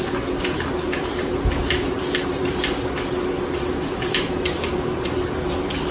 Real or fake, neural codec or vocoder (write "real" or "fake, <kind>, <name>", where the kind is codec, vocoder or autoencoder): real